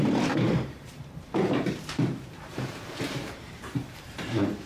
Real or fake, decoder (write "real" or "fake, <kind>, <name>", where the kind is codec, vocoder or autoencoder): fake, vocoder, BigVGAN v2